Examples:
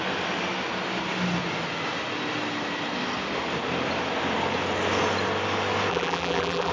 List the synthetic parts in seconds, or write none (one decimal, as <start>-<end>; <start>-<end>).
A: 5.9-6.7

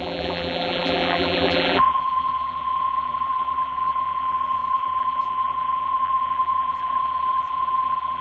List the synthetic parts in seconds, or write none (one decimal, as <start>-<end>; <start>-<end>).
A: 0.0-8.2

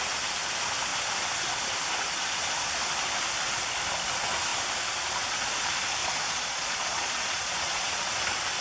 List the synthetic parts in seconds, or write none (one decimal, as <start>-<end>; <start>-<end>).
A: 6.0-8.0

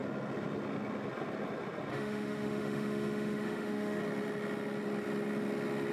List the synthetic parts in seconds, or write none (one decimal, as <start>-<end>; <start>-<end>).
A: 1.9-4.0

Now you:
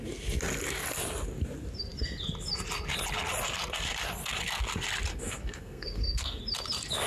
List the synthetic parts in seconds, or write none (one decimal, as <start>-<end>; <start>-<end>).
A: 5.1-6.4

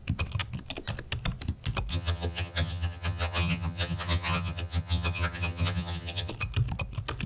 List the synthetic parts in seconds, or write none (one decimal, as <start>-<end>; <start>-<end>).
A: 1.9-6.3

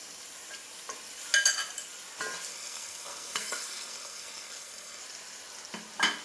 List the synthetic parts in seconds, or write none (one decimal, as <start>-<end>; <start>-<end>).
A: 2.5-5.0